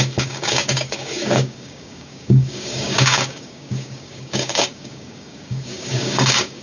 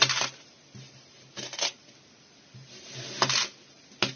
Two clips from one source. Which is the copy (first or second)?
first